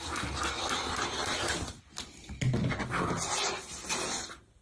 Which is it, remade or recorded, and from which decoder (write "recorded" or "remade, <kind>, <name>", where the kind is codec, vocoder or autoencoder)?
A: recorded